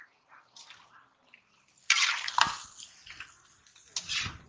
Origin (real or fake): real